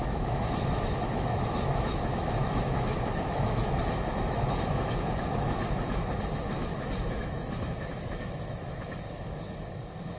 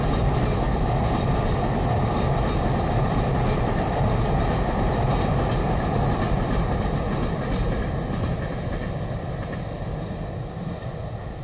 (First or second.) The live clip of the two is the second